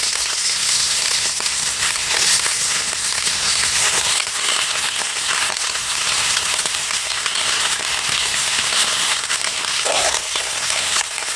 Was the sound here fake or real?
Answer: fake